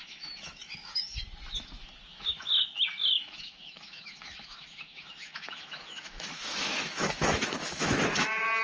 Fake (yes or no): yes